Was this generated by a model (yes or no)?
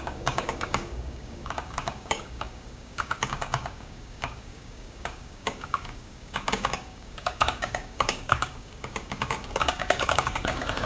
yes